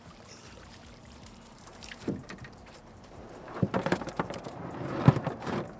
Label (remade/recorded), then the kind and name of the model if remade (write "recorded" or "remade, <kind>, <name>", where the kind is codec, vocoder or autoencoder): remade, vocoder, BigVGAN v2